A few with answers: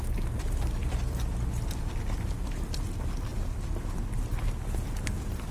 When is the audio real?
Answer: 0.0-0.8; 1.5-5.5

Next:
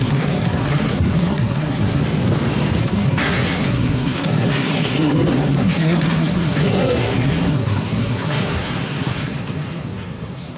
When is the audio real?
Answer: 2.0-2.8